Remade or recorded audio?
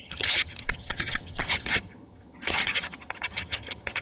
remade